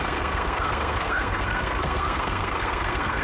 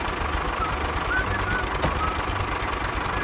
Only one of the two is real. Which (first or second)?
second